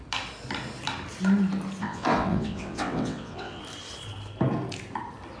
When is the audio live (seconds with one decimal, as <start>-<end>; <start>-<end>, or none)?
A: 0.0-1.8; 3.6-5.4